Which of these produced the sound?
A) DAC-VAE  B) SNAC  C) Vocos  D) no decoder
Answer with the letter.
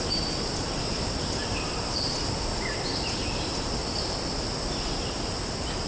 D